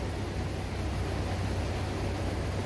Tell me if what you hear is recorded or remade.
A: recorded